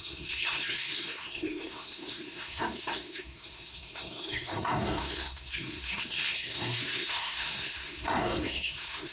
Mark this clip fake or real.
fake